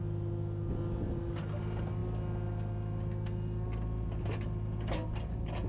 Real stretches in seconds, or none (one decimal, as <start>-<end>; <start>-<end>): 0.0-5.7